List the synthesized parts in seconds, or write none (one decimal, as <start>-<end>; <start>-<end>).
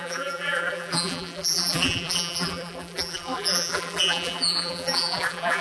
0.0-5.6